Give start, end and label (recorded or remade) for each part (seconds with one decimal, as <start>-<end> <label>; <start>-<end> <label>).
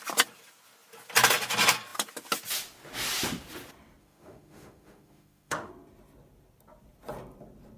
0.0-4.0 recorded; 4.0-5.7 remade; 5.7-7.8 recorded